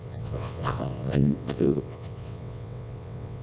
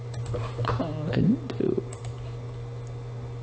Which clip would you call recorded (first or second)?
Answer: second